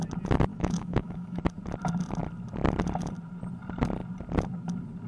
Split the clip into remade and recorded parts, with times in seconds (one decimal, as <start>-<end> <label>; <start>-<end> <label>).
0.0-0.5 recorded; 0.5-1.4 remade; 1.4-5.1 recorded